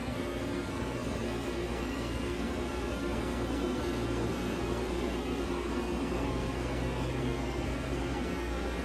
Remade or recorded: remade